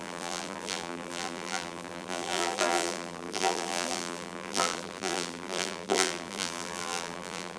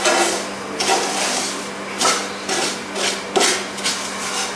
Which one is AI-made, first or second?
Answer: first